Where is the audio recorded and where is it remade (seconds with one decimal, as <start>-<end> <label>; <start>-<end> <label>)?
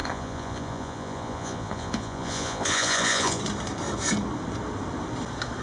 0.0-3.4 remade; 3.4-5.6 recorded